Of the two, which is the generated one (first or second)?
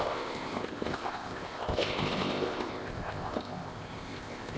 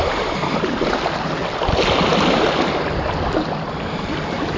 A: first